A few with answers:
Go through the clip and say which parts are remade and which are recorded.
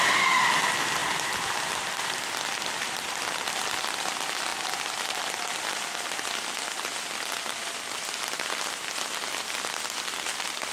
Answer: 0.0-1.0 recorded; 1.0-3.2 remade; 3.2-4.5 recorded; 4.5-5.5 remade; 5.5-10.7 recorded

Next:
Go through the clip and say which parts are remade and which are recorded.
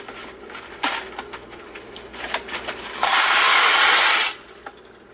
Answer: 0.0-3.0 recorded; 3.0-3.7 remade; 3.7-5.1 recorded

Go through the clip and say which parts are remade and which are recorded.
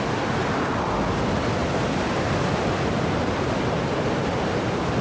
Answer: 0.0-1.6 recorded; 1.6-2.3 remade; 2.3-5.0 recorded